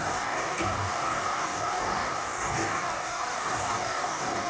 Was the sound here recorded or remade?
remade